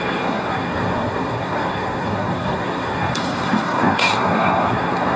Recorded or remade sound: remade